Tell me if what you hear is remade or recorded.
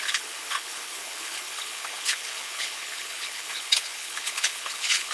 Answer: remade